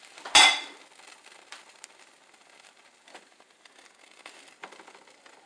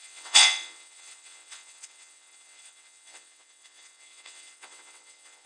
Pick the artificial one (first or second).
second